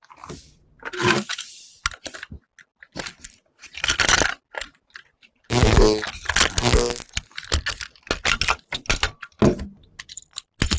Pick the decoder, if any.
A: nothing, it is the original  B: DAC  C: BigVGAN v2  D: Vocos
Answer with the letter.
A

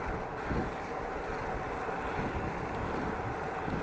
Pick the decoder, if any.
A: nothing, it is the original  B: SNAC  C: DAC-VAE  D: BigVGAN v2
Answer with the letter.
A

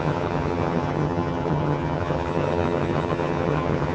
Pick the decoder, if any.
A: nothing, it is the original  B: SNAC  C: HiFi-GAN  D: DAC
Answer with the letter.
C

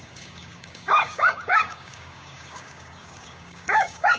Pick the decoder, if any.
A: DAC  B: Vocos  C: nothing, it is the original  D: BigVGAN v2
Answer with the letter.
A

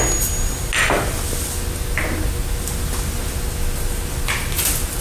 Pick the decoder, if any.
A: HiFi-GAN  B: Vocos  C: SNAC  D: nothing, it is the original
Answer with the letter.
D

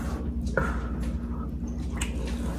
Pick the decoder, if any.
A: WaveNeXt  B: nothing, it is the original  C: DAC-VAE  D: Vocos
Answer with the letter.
B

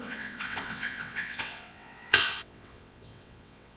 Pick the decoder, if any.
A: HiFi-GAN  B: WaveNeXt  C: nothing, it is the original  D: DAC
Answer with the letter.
B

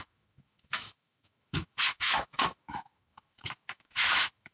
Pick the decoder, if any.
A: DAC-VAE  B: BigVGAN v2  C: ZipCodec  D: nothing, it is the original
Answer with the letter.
A